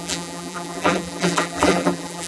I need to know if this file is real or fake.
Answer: fake